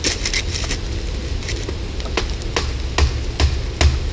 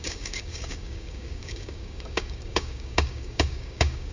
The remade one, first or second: second